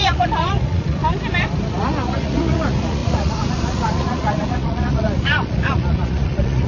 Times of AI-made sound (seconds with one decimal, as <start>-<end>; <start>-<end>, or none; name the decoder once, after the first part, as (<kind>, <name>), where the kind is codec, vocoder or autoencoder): 0.0-1.0 (vocoder, Vocos); 1.7-6.7